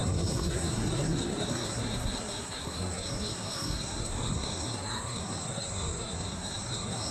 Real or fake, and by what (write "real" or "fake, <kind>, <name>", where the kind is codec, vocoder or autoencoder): fake, codec, SNAC